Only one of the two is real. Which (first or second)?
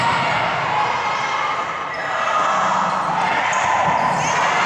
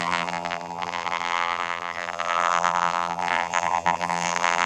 first